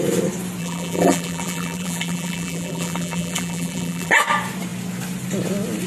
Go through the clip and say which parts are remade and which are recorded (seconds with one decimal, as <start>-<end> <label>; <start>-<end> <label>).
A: 0.0-0.6 recorded; 0.6-4.1 remade; 4.1-5.9 recorded